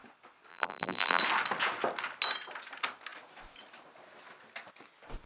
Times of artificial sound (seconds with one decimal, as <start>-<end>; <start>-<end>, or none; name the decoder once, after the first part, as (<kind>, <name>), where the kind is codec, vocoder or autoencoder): 0.5-1.2 (vocoder, BigVGAN v2)